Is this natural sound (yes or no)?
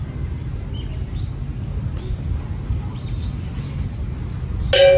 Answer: yes